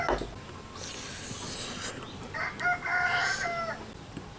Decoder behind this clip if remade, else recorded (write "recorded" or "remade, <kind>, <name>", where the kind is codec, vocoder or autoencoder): recorded